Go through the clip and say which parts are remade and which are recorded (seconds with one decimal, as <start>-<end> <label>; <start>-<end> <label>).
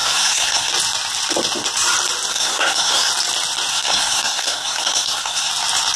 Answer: 0.0-0.7 remade; 0.7-2.3 recorded; 2.3-3.1 remade; 3.1-3.7 recorded; 3.7-5.5 remade; 5.5-6.0 recorded